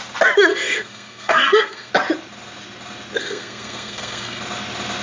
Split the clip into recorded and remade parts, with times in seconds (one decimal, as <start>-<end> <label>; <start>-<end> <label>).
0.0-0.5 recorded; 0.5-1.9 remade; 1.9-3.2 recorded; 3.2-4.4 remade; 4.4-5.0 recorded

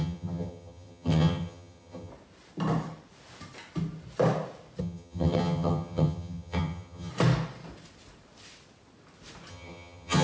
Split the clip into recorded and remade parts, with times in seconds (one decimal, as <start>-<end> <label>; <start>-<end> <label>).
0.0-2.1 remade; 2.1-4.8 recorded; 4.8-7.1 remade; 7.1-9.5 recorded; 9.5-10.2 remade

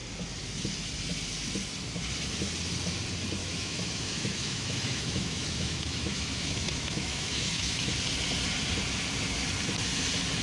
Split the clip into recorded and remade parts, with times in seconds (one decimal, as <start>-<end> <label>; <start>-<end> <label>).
0.0-3.4 recorded; 3.4-7.9 remade; 7.9-10.4 recorded

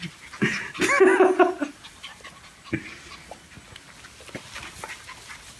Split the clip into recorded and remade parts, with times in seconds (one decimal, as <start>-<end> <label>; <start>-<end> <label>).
0.0-5.6 recorded

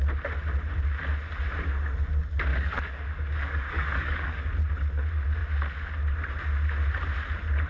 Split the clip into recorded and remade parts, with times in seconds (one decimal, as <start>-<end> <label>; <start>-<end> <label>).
0.0-2.5 recorded; 2.5-4.5 remade; 4.5-7.7 recorded

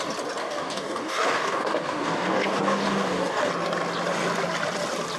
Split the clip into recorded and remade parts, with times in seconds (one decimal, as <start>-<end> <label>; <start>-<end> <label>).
0.0-0.4 recorded; 0.4-3.5 remade; 3.5-5.2 recorded